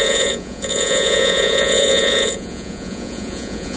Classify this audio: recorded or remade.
remade